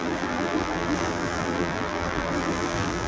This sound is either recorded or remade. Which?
remade